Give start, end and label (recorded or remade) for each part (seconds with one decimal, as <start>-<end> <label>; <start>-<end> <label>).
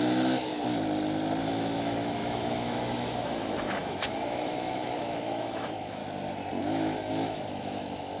0.0-0.5 remade; 0.5-1.4 recorded; 1.4-6.0 remade; 6.0-6.6 recorded; 6.6-8.2 remade